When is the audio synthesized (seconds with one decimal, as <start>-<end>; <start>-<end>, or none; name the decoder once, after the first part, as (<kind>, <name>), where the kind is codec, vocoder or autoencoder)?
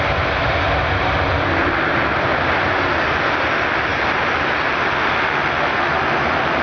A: 0.4-3.5 (vocoder, BigVGAN v2)